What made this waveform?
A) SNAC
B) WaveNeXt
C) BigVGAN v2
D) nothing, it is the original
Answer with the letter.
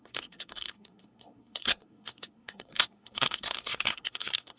A